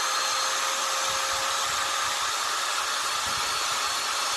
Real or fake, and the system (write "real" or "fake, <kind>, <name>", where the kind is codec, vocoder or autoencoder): real